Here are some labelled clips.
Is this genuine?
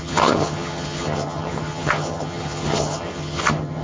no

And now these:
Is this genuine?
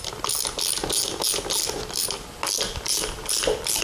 yes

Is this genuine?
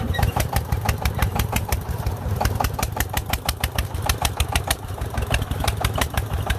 no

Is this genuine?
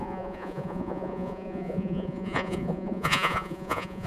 no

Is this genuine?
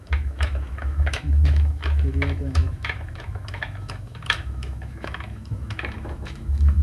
no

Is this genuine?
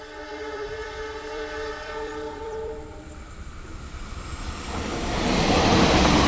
no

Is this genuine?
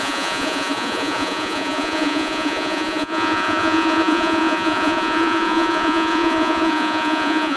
no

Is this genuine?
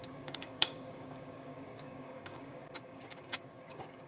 no